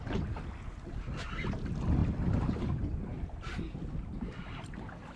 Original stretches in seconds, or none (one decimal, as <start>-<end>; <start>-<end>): 0.0-5.2